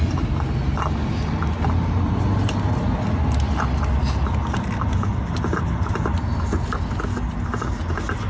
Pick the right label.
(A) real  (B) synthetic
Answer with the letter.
A